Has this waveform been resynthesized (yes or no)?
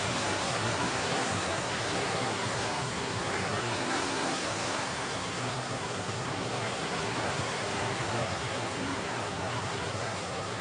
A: yes